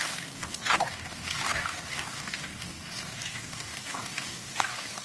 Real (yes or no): no